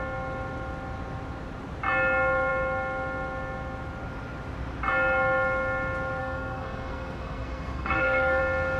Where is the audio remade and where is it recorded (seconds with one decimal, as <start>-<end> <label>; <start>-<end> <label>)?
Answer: 0.0-6.2 recorded; 6.2-8.4 remade; 8.4-8.8 recorded